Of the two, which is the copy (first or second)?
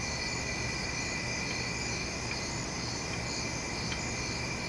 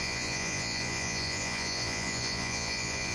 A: second